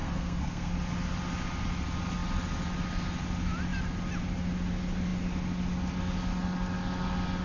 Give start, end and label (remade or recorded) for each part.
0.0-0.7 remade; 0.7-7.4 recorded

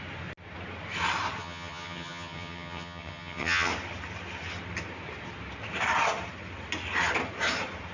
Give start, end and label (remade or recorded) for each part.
0.0-1.4 recorded; 1.4-3.7 remade; 3.7-7.9 recorded

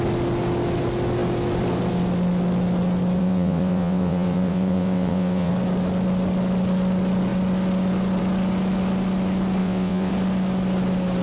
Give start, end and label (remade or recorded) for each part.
0.0-3.2 recorded; 3.2-5.5 remade; 5.5-9.6 recorded; 9.6-10.1 remade; 10.1-11.2 recorded

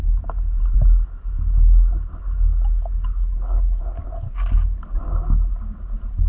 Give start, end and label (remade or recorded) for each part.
0.0-6.3 recorded

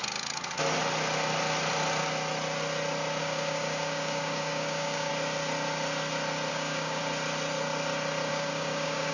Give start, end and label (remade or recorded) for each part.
0.0-3.2 recorded; 3.2-5.1 remade; 5.1-6.5 recorded; 6.5-7.0 remade; 7.0-8.3 recorded; 8.3-9.1 remade

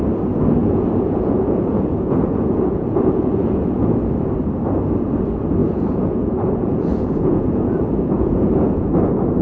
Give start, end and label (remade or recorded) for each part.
0.0-0.6 recorded; 0.6-4.1 remade; 4.1-5.6 recorded; 5.6-8.9 remade; 8.9-9.4 recorded

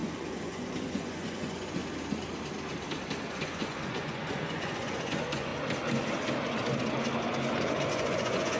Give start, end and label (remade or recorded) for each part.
0.0-1.8 remade; 1.8-3.3 recorded; 3.3-5.5 remade; 5.5-7.9 recorded; 7.9-8.6 remade

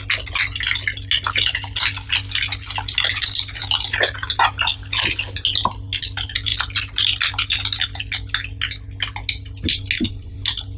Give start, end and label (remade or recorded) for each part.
0.0-10.8 recorded